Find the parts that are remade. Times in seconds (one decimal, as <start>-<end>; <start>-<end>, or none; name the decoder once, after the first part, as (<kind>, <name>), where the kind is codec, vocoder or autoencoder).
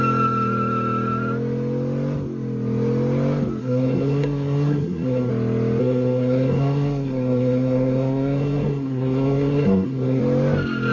3.6-5.3 (codec, SNAC); 5.8-10.2